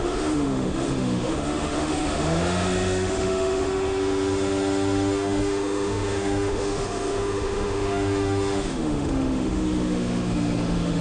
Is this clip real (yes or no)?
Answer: no